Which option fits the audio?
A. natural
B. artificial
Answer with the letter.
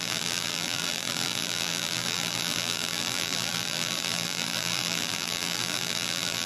B